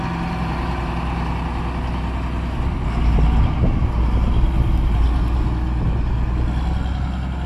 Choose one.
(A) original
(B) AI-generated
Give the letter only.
A